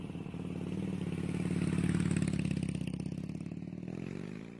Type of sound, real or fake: real